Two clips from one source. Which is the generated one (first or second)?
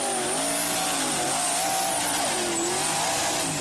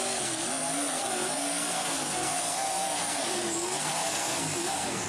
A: second